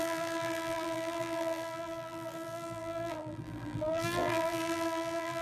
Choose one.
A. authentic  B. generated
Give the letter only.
B